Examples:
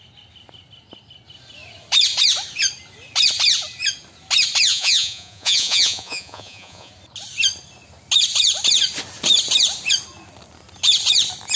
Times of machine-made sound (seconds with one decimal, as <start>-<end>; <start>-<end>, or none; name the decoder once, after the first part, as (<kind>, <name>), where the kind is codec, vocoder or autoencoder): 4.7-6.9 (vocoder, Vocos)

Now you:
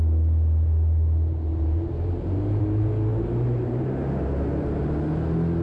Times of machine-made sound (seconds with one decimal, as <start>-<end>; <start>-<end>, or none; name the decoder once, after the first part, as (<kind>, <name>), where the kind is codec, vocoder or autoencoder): 1.5-2.6 (vocoder, BigVGAN v2); 3.1-3.8

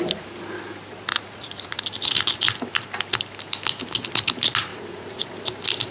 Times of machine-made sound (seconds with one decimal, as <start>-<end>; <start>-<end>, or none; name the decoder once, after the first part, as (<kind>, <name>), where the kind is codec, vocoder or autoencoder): 1.1-1.8 (vocoder, Vocos); 4.7-5.3

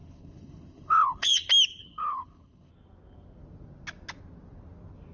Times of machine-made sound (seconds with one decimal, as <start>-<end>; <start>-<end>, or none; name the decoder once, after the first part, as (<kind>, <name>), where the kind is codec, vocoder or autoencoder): 0.0-1.4 (codec, HILCodec); 1.8-2.7

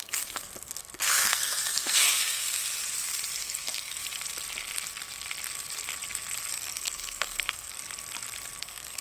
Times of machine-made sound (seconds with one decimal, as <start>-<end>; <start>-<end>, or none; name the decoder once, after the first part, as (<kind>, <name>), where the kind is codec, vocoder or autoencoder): 0.0-2.6 (codec, SNAC); 3.4-4.0; 6.5-7.8; 8.6-9.0

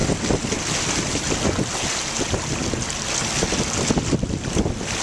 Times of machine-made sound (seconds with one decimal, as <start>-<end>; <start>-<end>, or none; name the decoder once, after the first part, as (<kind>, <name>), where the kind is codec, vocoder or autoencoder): none

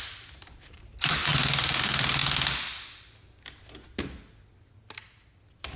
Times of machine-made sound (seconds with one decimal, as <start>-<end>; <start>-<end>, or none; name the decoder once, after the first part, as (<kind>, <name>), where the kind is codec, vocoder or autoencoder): 0.0-2.2 (vocoder, BigVGAN v2)